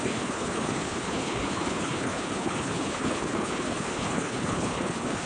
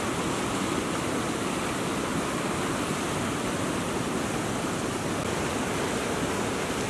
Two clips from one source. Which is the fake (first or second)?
first